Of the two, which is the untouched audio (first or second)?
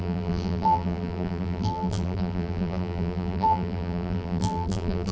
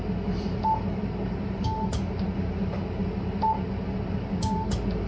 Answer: second